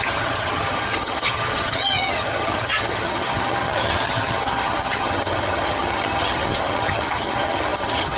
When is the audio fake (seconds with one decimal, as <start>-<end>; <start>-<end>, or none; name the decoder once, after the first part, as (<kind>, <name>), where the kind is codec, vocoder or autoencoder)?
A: 0.0-8.2 (vocoder, HiFi-GAN)